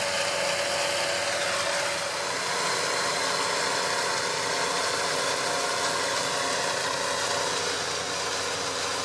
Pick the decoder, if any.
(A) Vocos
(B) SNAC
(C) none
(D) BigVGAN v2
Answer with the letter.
C